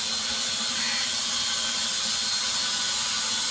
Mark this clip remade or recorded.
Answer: recorded